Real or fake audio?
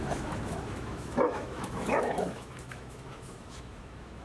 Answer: fake